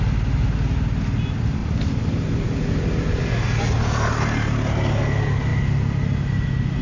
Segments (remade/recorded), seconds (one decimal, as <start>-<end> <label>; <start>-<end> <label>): 0.0-6.8 recorded